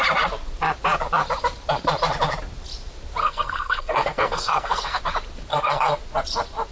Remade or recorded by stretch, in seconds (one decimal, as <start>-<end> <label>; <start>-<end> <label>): 0.0-3.2 recorded; 3.2-5.0 remade; 5.0-5.5 recorded; 5.5-6.0 remade; 6.0-6.7 recorded